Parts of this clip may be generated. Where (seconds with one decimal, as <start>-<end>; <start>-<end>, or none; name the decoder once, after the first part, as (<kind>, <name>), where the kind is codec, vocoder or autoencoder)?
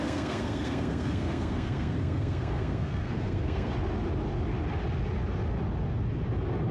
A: 0.0-3.7 (codec, SNAC)